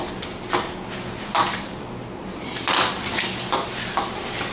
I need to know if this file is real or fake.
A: real